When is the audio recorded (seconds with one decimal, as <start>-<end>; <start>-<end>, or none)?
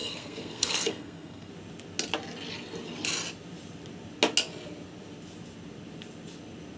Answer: 1.5-6.8